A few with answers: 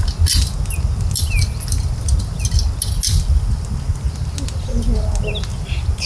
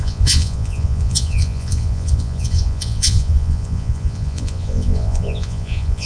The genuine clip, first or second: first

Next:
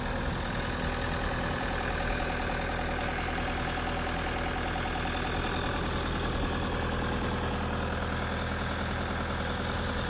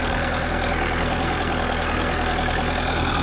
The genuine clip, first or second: first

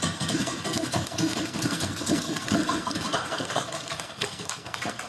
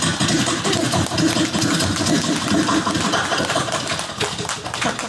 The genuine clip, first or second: second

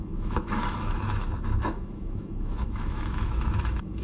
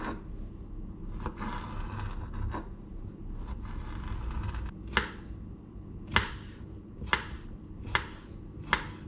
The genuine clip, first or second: second